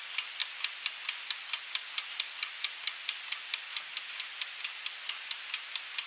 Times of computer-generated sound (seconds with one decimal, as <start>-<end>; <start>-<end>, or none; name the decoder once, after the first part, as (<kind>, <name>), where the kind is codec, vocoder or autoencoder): none